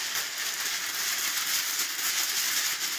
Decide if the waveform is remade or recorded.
recorded